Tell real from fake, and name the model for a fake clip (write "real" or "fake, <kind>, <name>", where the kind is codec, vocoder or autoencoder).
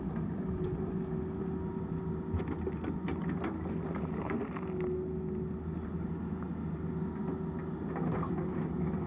real